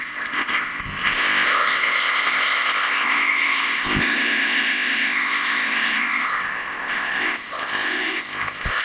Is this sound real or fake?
fake